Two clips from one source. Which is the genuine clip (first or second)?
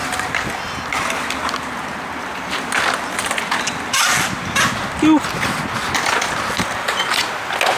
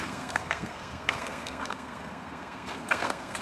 first